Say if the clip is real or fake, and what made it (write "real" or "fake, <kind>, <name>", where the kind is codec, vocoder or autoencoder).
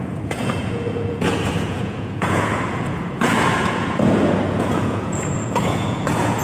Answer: fake, vocoder, Vocos